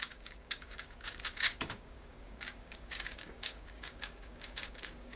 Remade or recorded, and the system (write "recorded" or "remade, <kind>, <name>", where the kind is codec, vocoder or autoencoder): remade, codec, DAC